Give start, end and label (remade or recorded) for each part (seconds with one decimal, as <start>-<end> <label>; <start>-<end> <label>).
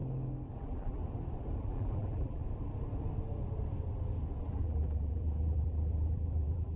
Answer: 0.0-0.6 recorded; 0.6-1.0 remade; 1.0-1.6 recorded; 1.6-2.4 remade; 2.4-4.4 recorded; 4.4-6.8 remade